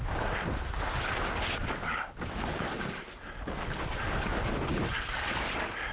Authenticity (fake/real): real